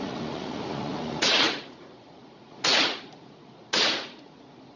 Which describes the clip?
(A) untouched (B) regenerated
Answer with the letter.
B